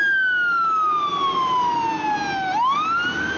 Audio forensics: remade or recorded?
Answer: recorded